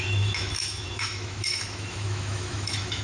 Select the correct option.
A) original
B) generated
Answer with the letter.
B